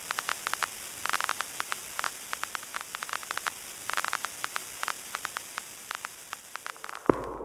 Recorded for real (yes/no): yes